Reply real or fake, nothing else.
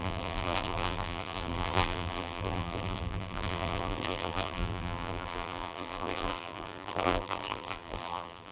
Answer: fake